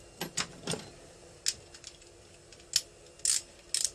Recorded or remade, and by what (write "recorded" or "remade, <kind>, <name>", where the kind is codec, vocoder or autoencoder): recorded